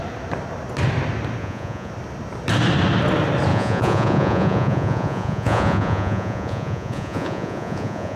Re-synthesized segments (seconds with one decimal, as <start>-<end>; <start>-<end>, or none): 1.4-1.9; 3.5-8.2